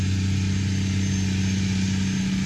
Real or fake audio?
real